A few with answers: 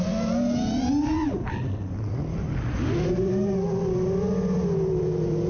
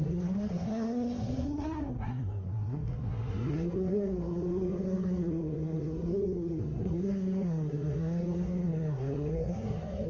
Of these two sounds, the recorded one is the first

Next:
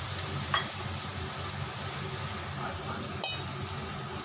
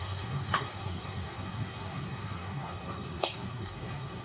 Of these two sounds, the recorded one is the first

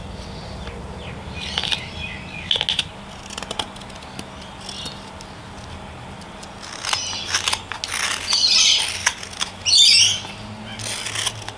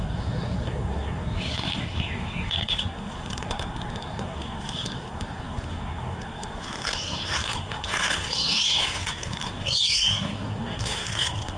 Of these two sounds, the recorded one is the first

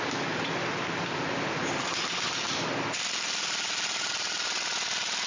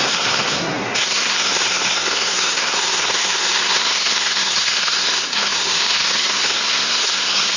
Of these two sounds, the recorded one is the first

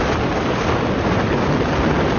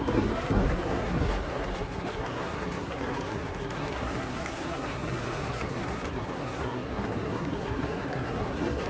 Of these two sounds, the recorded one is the first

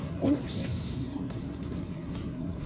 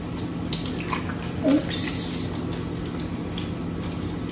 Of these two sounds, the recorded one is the second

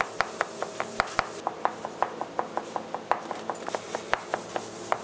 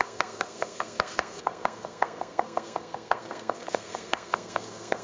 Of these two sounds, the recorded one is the first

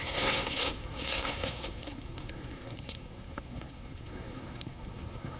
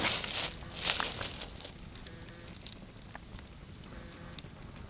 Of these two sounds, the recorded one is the second